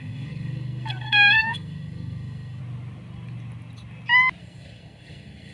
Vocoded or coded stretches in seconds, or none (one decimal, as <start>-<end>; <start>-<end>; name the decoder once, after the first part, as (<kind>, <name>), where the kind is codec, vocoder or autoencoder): 0.0-2.6 (codec, SNAC); 4.4-5.5